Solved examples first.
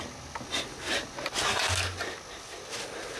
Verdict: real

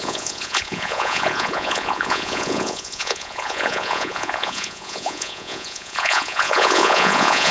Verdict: fake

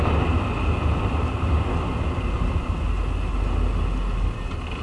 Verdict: real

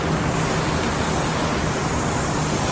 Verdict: real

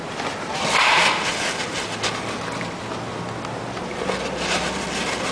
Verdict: real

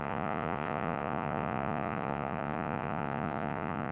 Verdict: fake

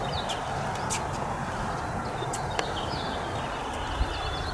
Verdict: real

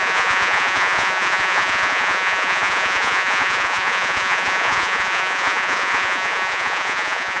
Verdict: fake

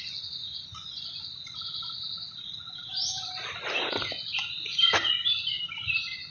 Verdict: real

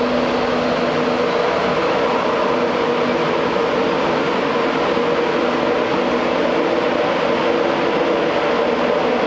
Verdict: real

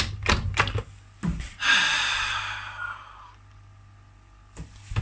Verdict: real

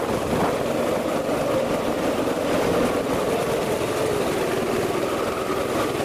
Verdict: real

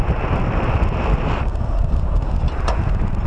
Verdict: real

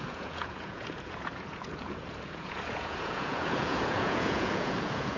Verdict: fake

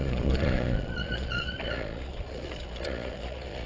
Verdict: fake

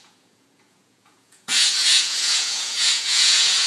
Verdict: fake